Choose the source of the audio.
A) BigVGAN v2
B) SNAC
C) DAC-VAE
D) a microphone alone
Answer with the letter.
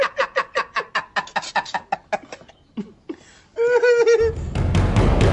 D